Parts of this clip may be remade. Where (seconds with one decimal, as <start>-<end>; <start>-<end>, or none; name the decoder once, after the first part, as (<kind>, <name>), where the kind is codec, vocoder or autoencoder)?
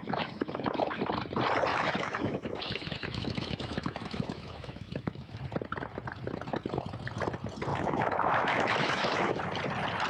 0.0-1.0 (autoencoder, DAC-VAE); 1.7-5.4; 7.7-9.4